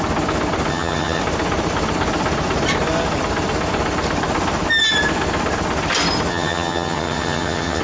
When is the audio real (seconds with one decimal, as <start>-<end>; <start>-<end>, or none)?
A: 0.0-0.7; 1.2-6.3